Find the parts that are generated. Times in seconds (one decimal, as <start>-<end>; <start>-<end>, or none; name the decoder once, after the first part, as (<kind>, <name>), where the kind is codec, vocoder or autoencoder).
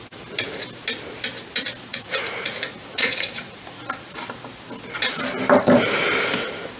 1.9-3.8 (vocoder, Vocos)